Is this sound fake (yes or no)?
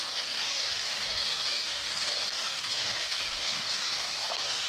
yes